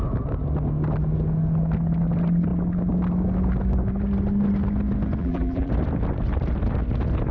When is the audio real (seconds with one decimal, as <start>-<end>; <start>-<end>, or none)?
0.0-5.2; 5.7-7.3